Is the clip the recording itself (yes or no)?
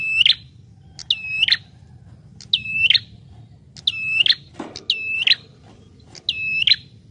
yes